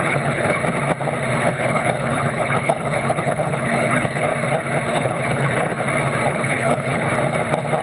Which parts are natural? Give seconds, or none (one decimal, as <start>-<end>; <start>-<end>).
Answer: 0.6-1.4; 4.3-4.9; 5.7-6.3; 7.1-7.8